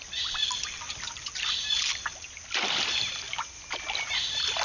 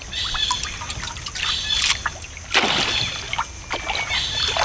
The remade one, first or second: first